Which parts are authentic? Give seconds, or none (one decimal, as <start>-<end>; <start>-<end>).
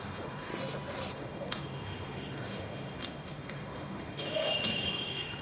0.5-1.1